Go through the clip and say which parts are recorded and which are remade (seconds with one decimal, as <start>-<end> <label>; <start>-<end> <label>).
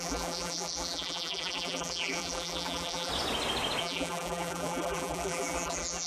0.0-3.1 remade; 3.1-3.8 recorded; 3.8-6.1 remade